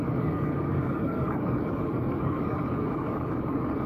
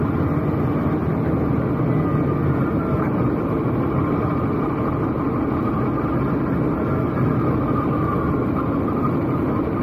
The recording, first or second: second